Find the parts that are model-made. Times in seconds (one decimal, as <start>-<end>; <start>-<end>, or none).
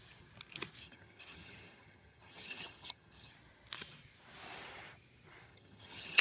0.8-3.3; 5.5-6.2